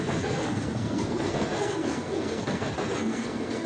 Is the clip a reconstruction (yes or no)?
yes